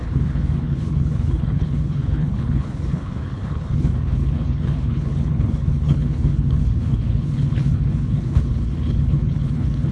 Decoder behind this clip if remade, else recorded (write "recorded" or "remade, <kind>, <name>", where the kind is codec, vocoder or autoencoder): remade, codec, HILCodec